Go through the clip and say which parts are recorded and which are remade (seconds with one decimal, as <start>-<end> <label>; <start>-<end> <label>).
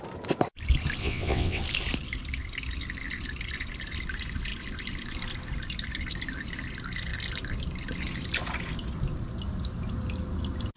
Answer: 0.0-1.0 recorded; 1.0-1.6 remade; 1.6-10.8 recorded